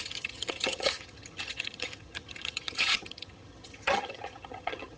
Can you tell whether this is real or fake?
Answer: fake